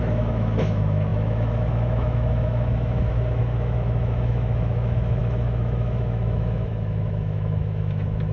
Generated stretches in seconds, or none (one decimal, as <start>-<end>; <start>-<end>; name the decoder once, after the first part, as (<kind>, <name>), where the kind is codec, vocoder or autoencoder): 0.0-8.3 (autoencoder, DAC-VAE)

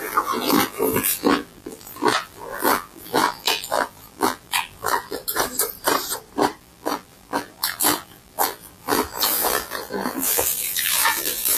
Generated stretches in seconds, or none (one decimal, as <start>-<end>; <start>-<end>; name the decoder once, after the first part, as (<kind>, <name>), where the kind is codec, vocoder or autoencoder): 0.0-5.2 (vocoder, BigVGAN v2); 6.6-11.6